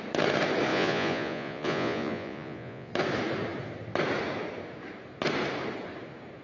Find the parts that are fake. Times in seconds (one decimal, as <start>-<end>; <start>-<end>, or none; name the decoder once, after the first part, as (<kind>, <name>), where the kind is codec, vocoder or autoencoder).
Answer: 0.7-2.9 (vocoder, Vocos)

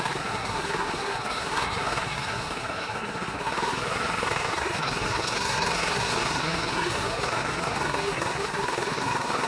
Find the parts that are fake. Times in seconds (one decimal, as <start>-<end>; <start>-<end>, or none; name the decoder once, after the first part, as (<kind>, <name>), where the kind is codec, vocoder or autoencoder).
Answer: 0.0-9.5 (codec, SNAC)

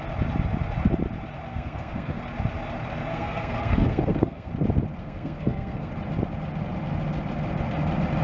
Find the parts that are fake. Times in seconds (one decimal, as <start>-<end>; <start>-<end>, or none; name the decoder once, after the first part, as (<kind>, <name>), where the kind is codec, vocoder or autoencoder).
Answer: 1.5-2.2 (codec, SNAC); 3.1-4.5; 5.0-5.9